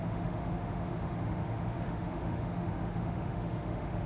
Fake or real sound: fake